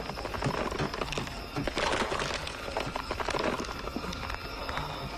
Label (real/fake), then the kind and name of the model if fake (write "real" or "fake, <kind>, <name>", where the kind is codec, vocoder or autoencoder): real